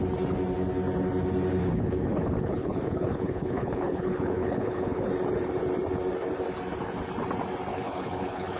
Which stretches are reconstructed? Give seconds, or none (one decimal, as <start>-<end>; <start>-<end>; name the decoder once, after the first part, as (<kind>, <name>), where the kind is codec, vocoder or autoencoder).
1.6-5.1 (codec, HILCodec); 7.7-8.6